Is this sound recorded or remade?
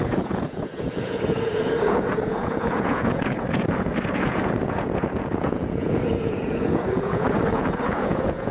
remade